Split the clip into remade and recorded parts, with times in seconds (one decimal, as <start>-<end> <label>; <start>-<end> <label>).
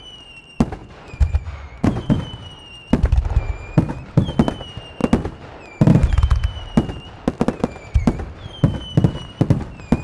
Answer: 0.0-0.8 recorded; 0.8-2.2 remade; 2.2-10.0 recorded